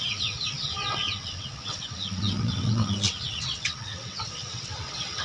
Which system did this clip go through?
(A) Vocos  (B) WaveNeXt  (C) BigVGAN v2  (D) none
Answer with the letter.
B